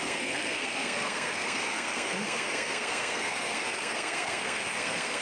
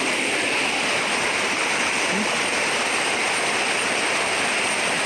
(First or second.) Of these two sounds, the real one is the second